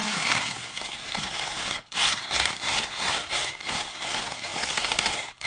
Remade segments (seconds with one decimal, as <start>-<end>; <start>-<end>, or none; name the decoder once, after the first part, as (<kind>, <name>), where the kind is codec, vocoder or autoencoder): 0.0-5.5 (codec, SNAC)